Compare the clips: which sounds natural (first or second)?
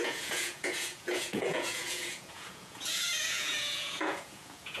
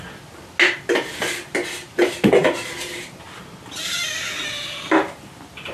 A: second